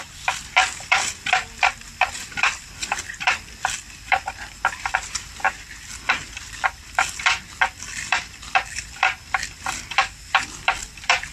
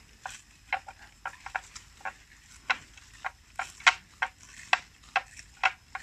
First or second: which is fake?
first